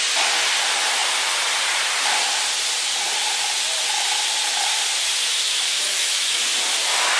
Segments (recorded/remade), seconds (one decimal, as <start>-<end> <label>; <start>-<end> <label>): 0.0-5.3 recorded; 5.3-6.4 remade; 6.4-7.2 recorded